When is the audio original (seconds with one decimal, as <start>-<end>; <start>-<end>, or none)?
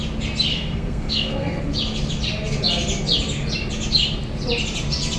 0.0-0.5; 1.6-5.2